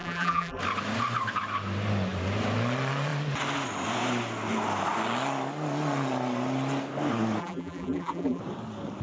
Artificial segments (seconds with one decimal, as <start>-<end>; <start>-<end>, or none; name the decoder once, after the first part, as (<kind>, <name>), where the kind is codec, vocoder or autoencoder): 0.0-0.6 (vocoder, BigVGAN v2); 7.4-8.4